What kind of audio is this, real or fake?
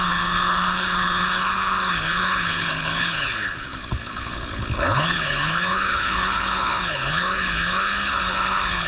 fake